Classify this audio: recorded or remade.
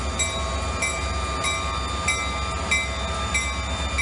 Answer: recorded